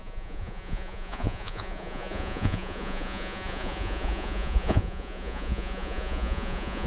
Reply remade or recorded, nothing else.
remade